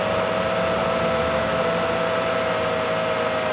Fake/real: real